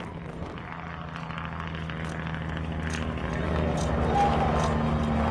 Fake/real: real